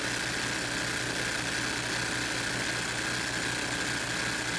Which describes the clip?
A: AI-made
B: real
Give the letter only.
B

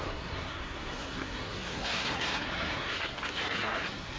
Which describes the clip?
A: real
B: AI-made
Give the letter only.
B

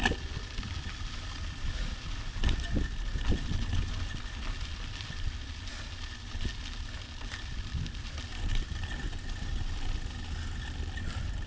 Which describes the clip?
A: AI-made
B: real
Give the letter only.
B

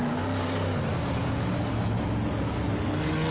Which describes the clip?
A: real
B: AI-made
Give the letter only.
A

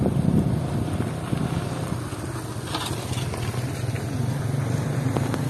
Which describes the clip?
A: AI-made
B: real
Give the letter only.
B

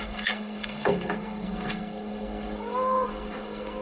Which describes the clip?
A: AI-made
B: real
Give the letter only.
A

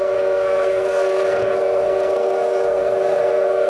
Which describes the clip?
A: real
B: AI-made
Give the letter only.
B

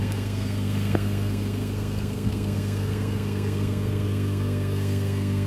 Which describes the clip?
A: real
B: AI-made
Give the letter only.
B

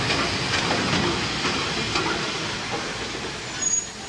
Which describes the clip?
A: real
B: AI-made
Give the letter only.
A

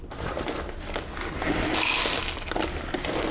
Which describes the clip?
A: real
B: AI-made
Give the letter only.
A